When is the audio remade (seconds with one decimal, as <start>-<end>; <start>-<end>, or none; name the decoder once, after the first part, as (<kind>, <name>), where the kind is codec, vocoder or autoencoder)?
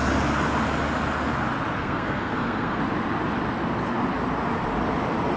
1.8-2.8 (codec, SNAC)